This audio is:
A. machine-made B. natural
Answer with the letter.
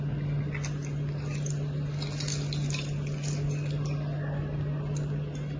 B